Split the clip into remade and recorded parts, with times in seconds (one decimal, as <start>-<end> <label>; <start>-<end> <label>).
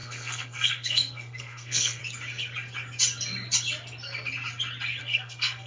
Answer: 0.0-2.0 remade; 2.0-5.0 recorded; 5.0-5.7 remade